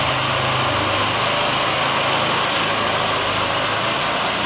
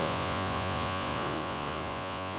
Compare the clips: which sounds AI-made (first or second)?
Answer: second